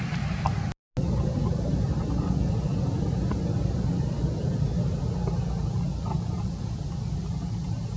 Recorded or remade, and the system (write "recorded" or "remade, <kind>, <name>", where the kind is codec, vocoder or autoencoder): recorded